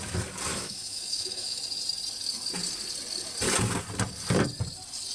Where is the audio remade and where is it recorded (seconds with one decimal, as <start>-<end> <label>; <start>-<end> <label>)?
0.0-0.5 recorded; 0.5-1.6 remade; 1.6-5.1 recorded